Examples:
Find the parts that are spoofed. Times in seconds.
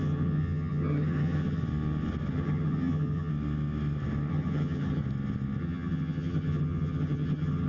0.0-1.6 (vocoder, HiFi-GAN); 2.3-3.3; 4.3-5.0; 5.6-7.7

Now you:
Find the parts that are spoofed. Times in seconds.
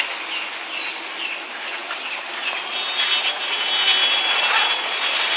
none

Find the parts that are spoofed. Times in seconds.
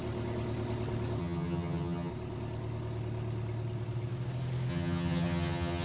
1.2-2.1 (vocoder, HiFi-GAN); 4.7-5.8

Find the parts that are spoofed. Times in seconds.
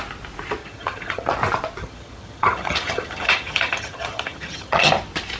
0.6-1.3 (vocoder, HiFi-GAN); 1.8-4.9